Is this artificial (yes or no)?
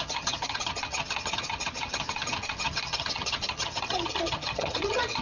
yes